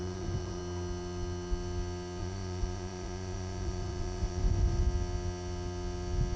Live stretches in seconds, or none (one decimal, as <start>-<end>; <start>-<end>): 0.6-2.2; 4.8-6.4